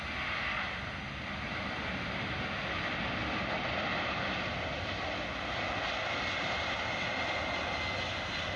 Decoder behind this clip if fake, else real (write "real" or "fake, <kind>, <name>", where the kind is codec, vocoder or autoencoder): real